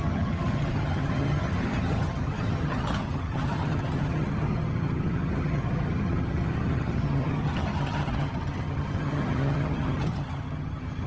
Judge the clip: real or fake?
fake